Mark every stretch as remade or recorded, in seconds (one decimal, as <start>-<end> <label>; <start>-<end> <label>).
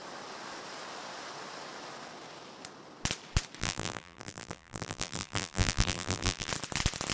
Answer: 0.0-3.6 recorded; 3.6-6.5 remade; 6.5-7.1 recorded